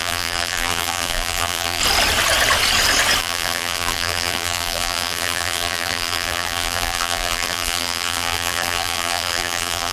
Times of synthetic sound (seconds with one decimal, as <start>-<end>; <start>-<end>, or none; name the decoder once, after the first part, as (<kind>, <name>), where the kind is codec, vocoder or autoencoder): 0.0-1.8 (vocoder, BigVGAN v2); 3.2-9.9